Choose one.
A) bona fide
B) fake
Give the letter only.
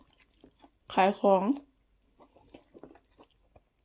A